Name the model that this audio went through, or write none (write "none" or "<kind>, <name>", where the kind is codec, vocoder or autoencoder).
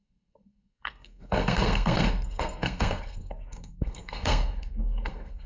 codec, SNAC